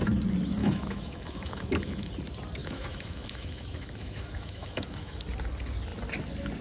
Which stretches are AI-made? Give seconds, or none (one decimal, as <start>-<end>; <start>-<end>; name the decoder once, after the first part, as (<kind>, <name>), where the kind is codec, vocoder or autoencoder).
0.6-2.1 (autoencoder, DAC-VAE); 2.6-5.2